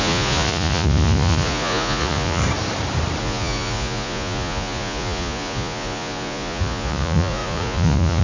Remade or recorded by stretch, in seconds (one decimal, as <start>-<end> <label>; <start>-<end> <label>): 0.0-2.4 remade; 2.4-3.2 recorded; 3.2-8.2 remade